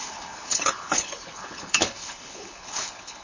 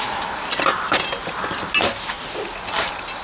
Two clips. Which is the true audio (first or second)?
second